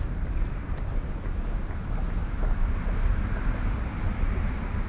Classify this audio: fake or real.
real